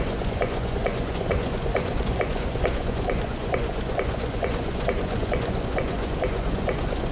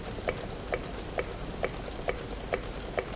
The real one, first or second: second